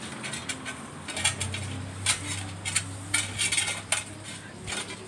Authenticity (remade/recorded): recorded